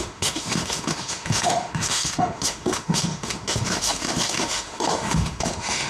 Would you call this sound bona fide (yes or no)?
no